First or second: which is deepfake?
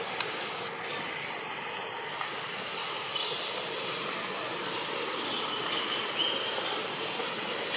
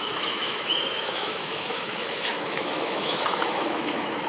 second